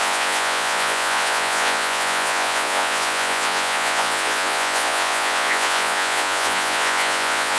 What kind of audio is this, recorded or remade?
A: remade